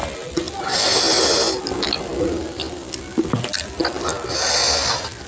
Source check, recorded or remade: recorded